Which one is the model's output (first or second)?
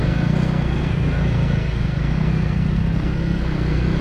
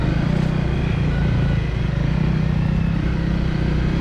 first